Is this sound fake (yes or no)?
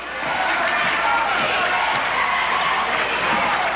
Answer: no